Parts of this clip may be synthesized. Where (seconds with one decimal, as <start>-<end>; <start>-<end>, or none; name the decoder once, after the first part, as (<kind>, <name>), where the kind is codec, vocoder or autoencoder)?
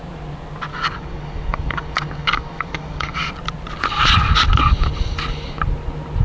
0.7-3.3 (codec, DAC)